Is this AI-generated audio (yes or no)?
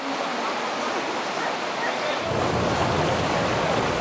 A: no